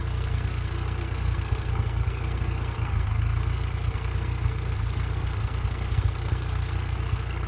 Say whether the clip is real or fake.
fake